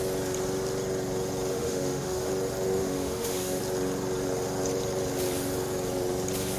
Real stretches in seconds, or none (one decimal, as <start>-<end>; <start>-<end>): 0.0-1.5; 2.3-2.8; 3.6-6.6